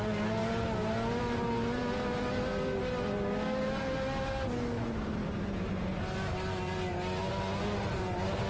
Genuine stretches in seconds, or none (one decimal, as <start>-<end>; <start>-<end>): 0.0-8.5